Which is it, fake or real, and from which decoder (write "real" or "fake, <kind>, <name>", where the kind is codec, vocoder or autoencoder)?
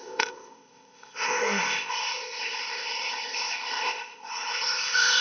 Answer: fake, codec, ZipCodec